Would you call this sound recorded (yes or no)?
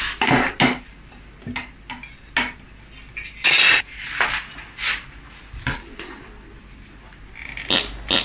yes